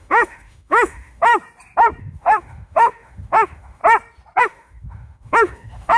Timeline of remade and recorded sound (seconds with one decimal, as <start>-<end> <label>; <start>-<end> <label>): 0.0-1.3 remade; 1.3-2.0 recorded; 2.0-3.8 remade; 3.8-4.4 recorded; 4.4-6.0 remade